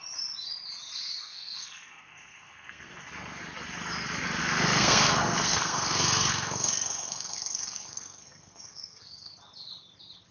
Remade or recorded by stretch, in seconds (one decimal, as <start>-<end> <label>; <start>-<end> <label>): 0.0-1.2 recorded; 1.2-2.9 remade; 2.9-4.4 recorded; 4.4-9.3 remade; 9.3-10.3 recorded